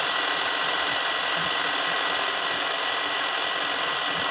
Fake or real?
real